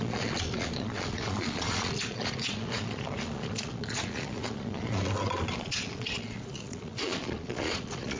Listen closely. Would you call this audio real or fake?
fake